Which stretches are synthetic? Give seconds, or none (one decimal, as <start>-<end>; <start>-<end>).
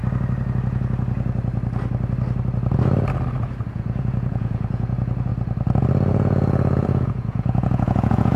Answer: 3.7-5.3; 6.1-8.4